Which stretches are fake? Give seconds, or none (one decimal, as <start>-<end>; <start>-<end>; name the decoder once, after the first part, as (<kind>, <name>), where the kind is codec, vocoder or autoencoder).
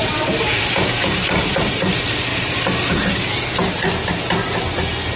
0.0-1.7 (vocoder, BigVGAN v2); 2.3-3.4